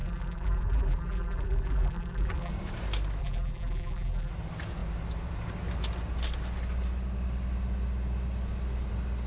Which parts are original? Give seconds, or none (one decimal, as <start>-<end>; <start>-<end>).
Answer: 2.5-3.2; 4.3-9.3